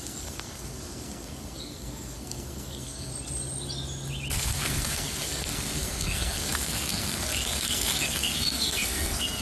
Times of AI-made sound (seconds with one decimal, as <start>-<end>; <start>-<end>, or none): 0.0-3.1; 4.3-9.4